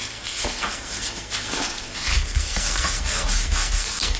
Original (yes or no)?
no